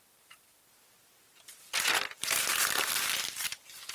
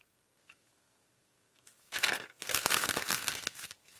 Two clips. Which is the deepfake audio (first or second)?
second